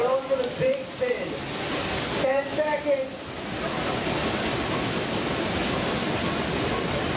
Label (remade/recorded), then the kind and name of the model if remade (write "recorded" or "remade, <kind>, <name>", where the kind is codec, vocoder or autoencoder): recorded